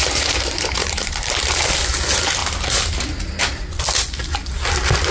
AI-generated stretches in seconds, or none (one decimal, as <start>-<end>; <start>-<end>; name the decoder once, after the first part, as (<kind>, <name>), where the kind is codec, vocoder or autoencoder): 0.0-1.4 (vocoder, BigVGAN v2)